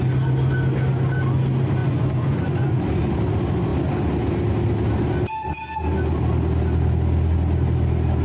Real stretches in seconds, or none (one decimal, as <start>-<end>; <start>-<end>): 0.0-1.8; 2.8-8.2